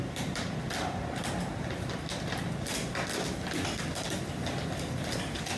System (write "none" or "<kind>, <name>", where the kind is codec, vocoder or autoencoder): vocoder, BigVGAN v2